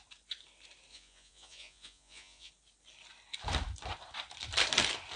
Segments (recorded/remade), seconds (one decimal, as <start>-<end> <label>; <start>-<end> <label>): 0.0-0.9 recorded; 0.9-2.5 remade; 2.5-5.2 recorded